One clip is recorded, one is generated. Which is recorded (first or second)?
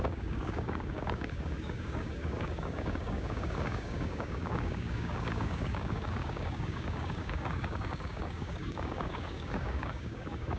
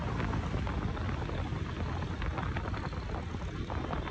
second